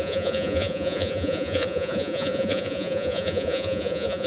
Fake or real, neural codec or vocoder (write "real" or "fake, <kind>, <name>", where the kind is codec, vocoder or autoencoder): fake, vocoder, Vocos